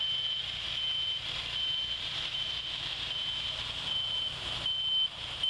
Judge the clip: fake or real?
real